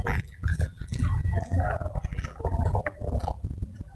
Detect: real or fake fake